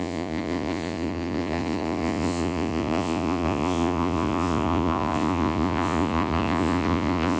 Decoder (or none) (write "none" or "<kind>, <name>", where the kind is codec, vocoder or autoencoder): vocoder, Vocos